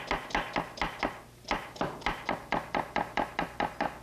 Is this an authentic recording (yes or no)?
yes